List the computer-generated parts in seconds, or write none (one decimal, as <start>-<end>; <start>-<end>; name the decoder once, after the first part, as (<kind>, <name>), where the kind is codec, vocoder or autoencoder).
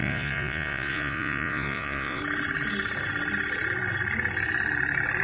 0.0-2.2 (vocoder, Vocos)